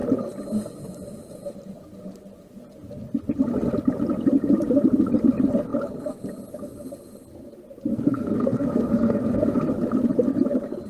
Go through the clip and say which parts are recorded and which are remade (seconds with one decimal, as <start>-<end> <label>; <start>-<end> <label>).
0.0-7.9 recorded; 7.9-9.6 remade; 9.6-10.9 recorded